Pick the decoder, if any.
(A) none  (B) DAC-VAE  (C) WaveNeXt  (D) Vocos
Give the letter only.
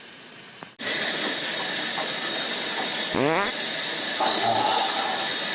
A